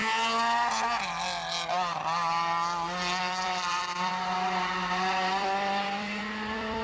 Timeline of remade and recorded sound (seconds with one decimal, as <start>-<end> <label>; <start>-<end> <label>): 0.0-3.2 recorded; 3.2-4.1 remade; 4.1-5.4 recorded; 5.4-6.8 remade

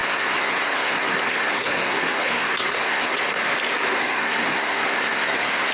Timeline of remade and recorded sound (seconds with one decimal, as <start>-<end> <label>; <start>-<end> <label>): 0.0-3.4 remade; 3.4-4.0 recorded; 4.0-5.7 remade

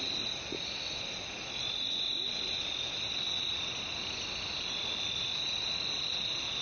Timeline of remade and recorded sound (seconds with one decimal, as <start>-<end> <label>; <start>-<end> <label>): 0.0-6.6 recorded

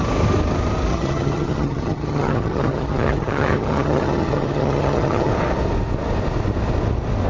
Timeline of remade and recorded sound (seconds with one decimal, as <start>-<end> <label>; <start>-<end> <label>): 0.0-0.9 recorded; 0.9-5.3 remade; 5.3-7.3 recorded

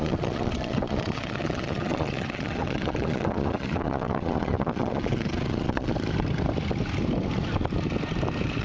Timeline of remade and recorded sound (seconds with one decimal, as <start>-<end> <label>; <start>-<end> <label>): 0.0-5.9 remade; 5.9-8.6 recorded

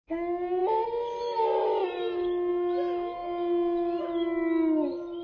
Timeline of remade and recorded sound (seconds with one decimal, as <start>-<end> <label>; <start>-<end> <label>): 0.0-5.2 recorded

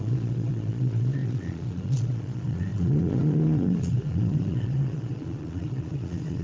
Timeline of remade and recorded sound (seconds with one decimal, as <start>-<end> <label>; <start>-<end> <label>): 0.0-6.4 remade

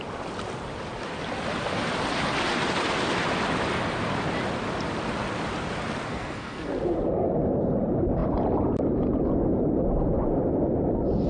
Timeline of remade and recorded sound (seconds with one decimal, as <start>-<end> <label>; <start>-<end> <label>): 0.0-6.1 recorded; 6.1-6.7 remade; 6.7-11.3 recorded